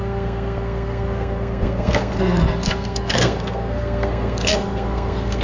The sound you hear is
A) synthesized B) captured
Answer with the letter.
A